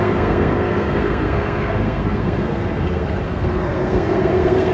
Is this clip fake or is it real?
fake